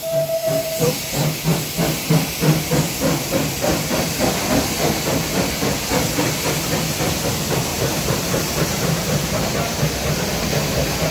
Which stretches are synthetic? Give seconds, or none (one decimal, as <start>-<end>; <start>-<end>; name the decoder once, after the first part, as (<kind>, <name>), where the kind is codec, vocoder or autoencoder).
7.7-9.4 (vocoder, BigVGAN v2)